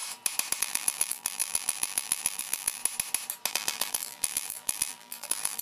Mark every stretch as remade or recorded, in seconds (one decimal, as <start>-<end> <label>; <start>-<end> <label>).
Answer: 0.0-0.6 recorded; 0.6-2.8 remade; 2.8-3.5 recorded; 3.5-5.6 remade